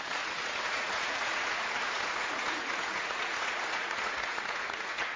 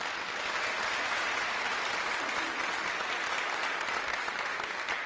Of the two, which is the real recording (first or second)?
second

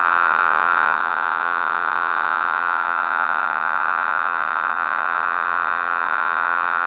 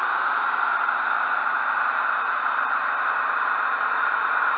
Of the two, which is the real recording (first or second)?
second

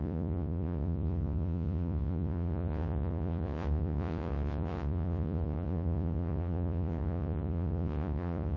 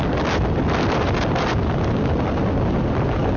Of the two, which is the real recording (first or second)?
second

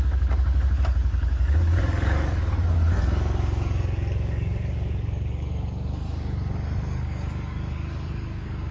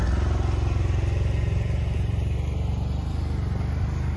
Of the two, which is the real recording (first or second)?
second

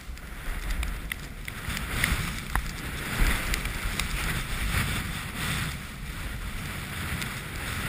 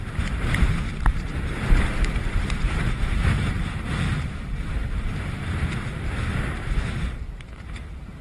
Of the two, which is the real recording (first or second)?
first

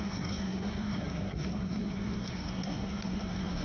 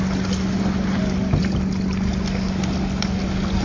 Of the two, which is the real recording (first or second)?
second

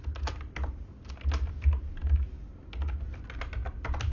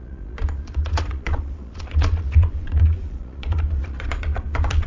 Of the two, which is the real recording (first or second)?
first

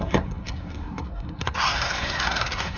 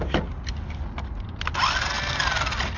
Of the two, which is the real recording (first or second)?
second